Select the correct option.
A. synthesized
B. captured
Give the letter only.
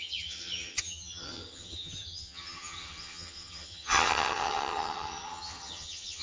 A